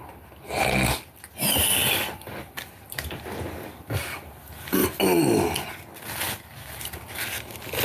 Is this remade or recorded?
recorded